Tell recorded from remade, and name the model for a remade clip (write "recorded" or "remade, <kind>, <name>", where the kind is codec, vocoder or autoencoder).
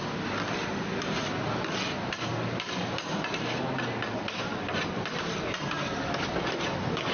recorded